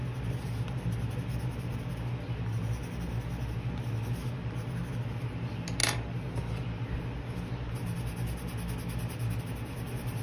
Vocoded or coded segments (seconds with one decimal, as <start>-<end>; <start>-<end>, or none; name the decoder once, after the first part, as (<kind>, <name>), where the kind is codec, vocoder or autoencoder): none